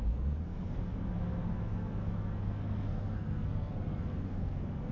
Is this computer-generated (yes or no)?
yes